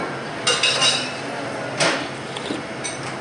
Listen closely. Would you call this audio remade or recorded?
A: recorded